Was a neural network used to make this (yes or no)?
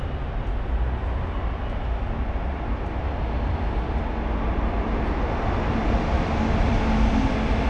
no